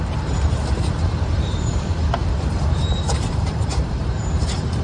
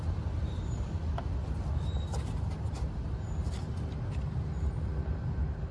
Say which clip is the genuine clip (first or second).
second